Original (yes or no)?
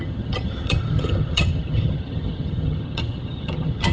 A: no